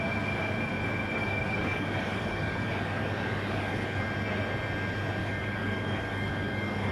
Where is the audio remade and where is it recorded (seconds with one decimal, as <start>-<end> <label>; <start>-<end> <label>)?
0.0-1.2 recorded; 1.2-4.0 remade; 4.0-5.2 recorded; 5.2-6.9 remade